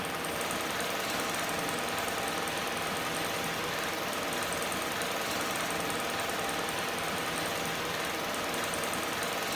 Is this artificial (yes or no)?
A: no